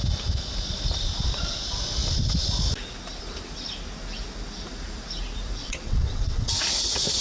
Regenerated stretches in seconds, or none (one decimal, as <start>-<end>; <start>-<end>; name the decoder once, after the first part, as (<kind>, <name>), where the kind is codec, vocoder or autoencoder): 5.6-6.5 (vocoder, WaveNeXt)